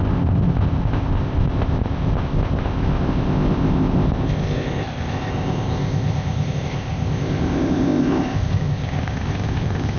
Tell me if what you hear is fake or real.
fake